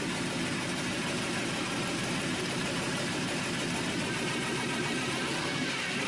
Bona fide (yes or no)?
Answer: no